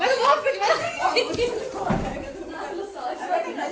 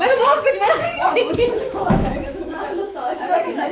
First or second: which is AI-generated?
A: second